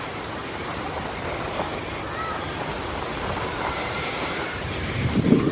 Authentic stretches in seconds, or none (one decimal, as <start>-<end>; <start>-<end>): 0.4-1.0; 1.7-3.4